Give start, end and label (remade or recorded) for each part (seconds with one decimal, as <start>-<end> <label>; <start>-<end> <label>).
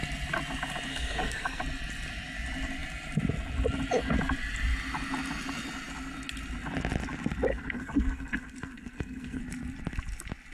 0.0-0.9 recorded; 0.9-1.6 remade; 1.6-7.5 recorded; 7.5-9.4 remade; 9.4-10.5 recorded